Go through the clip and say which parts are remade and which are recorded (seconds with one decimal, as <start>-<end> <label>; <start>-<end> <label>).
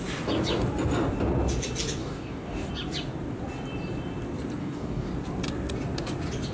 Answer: 0.0-2.0 recorded; 2.0-2.7 remade; 2.7-4.6 recorded; 4.6-5.1 remade; 5.1-6.5 recorded